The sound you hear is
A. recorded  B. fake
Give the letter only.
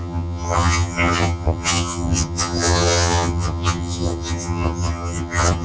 B